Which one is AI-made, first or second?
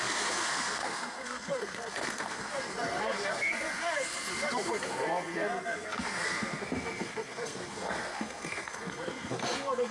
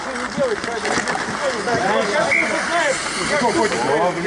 first